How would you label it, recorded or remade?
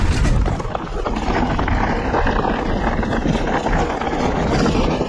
recorded